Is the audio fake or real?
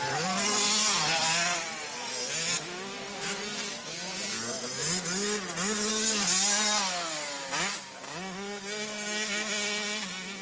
real